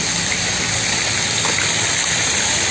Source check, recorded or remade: recorded